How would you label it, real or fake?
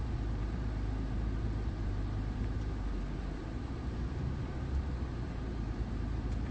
fake